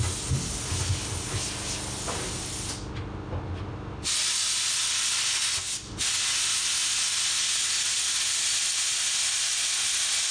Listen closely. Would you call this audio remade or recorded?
recorded